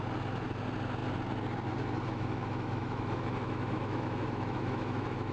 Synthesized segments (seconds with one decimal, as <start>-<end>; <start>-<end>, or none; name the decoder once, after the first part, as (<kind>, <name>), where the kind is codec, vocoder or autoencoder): 2.1-5.3 (autoencoder, DAC-VAE)